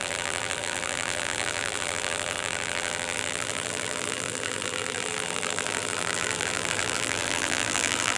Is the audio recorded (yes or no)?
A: no